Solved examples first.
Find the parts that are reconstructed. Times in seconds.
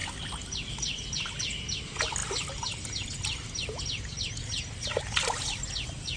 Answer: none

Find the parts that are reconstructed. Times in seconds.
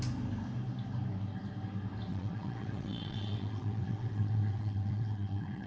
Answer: 2.1-5.7 (vocoder, WaveNeXt)